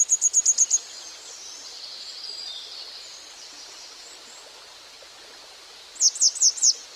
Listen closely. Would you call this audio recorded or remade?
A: recorded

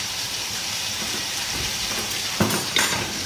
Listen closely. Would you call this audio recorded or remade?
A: remade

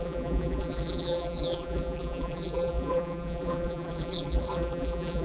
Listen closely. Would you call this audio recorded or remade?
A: remade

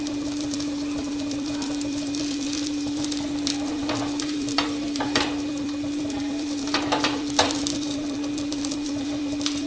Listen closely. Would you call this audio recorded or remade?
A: remade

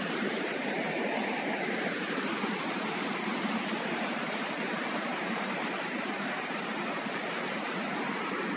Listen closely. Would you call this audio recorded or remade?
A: remade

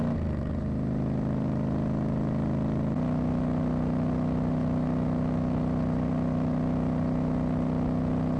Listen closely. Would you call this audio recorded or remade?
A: recorded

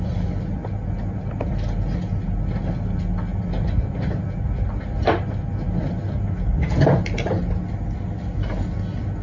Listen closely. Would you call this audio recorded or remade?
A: recorded